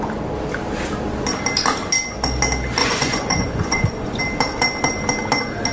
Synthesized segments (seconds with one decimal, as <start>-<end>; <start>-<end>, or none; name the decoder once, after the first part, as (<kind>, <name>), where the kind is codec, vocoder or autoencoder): 2.8-4.2 (vocoder, Vocos)